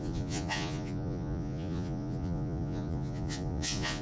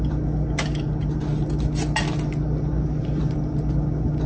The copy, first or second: first